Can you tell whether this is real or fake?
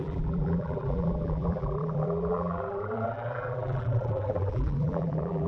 fake